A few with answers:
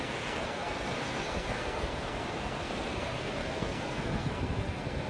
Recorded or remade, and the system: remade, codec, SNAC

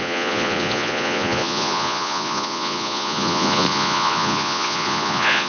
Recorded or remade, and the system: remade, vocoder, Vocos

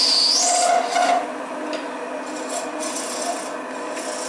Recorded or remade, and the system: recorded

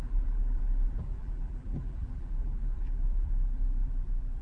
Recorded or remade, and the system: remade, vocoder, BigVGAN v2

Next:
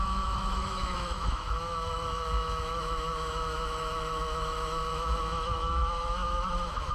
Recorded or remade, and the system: remade, autoencoder, DAC-VAE